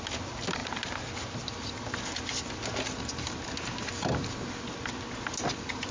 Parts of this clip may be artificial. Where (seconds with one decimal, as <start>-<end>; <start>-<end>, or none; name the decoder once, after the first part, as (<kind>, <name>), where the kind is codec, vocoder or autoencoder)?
none